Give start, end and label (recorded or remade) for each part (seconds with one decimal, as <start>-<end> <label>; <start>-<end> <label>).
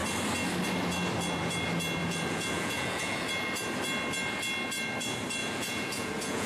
0.0-2.0 recorded; 2.0-3.3 remade; 3.3-5.4 recorded; 5.4-6.5 remade